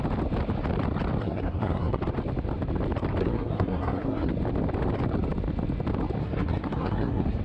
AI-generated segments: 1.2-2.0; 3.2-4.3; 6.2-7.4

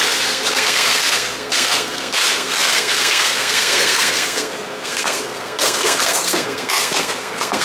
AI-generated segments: 0.0-7.6

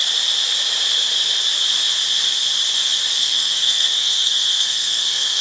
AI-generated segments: 3.2-5.4

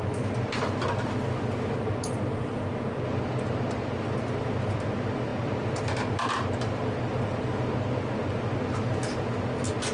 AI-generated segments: none

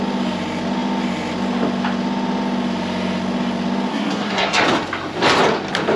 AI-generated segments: 3.9-4.6